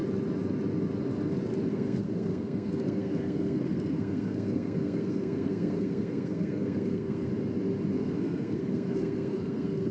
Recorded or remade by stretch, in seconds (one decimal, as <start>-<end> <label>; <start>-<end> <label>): 0.0-1.7 recorded; 1.7-7.3 remade; 7.3-7.9 recorded; 7.9-9.9 remade